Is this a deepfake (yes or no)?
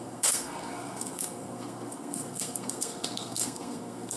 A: yes